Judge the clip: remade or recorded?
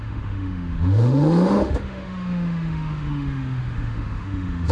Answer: remade